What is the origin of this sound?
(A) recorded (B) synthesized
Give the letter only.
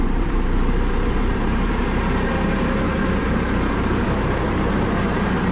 B